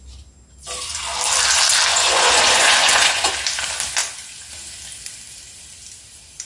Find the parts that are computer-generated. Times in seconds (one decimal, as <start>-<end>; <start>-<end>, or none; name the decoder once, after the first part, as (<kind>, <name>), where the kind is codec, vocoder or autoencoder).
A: 1.9-3.3 (vocoder, Vocos)